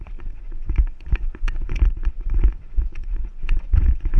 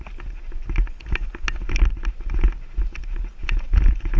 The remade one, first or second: first